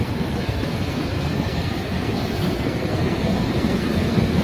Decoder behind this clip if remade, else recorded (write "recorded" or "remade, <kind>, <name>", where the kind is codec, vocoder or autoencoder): remade, codec, SNAC